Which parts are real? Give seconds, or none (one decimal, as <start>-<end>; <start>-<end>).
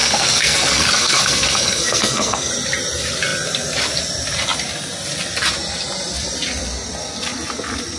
2.5-8.0